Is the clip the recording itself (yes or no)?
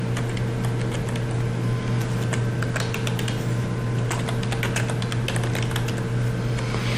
yes